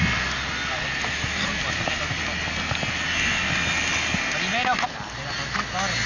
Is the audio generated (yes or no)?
no